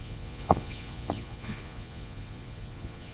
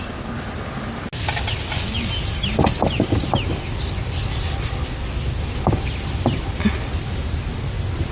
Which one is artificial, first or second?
first